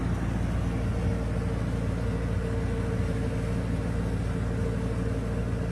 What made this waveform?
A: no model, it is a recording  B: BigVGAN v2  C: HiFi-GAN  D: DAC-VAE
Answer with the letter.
A